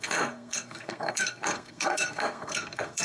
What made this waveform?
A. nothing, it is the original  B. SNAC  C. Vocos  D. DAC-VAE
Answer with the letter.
B